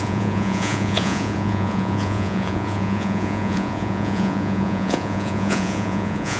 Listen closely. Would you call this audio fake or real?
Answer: fake